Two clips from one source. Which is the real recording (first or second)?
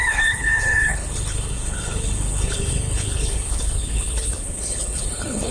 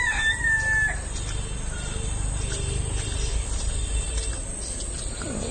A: second